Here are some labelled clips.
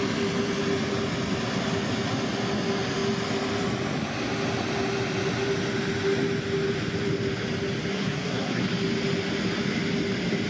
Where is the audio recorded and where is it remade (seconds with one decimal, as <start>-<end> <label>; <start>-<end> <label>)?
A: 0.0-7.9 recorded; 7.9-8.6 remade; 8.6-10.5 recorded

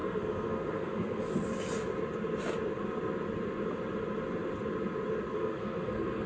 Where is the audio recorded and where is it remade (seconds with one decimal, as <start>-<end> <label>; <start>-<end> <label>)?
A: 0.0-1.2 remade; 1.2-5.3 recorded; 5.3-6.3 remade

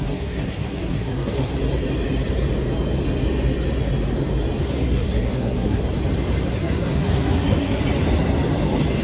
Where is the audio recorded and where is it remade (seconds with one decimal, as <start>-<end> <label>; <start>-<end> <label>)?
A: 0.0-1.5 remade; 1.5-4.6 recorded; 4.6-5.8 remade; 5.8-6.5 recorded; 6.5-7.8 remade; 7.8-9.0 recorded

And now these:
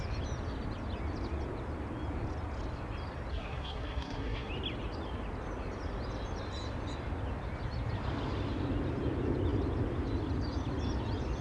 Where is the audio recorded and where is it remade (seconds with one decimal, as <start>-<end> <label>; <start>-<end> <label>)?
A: 0.0-3.3 recorded; 3.3-4.5 remade; 4.5-11.4 recorded

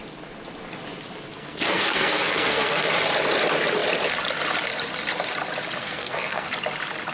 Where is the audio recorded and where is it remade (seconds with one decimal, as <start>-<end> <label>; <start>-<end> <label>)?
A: 0.0-1.3 recorded; 1.3-2.8 remade; 2.8-5.8 recorded; 5.8-6.5 remade; 6.5-7.1 recorded

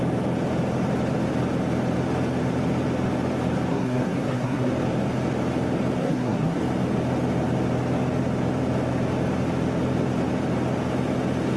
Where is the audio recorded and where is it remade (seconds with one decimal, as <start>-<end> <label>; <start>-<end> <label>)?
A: 0.0-3.7 recorded; 3.7-4.7 remade; 4.7-6.0 recorded; 6.0-6.6 remade; 6.6-11.6 recorded

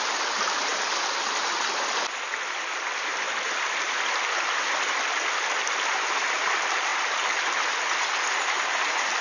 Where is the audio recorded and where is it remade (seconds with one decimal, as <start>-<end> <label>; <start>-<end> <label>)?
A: 0.0-9.2 recorded